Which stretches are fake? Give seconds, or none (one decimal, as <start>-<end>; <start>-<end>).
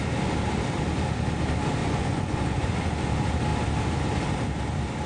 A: 1.8-2.9